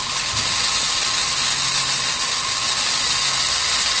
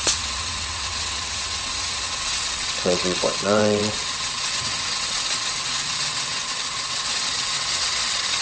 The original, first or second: first